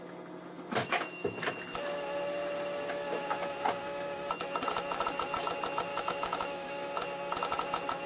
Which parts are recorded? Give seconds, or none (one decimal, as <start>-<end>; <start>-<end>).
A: 0.0-0.8; 1.5-5.9; 6.9-8.1